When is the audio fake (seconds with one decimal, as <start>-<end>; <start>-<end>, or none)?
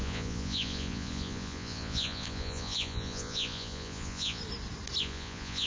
0.0-4.4; 5.0-5.7